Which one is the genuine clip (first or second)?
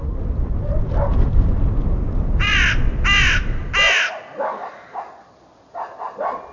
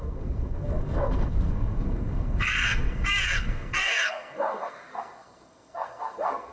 first